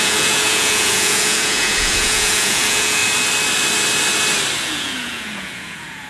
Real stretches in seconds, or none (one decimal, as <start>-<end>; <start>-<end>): 3.0-4.6